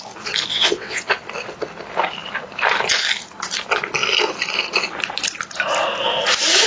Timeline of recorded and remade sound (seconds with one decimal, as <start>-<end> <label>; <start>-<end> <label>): 0.0-0.5 recorded; 0.5-1.1 remade; 1.1-6.7 recorded